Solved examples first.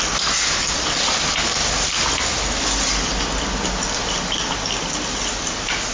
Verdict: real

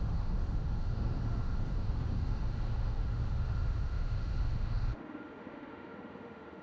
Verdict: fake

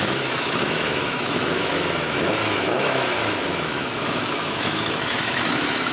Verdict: fake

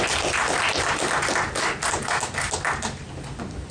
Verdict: real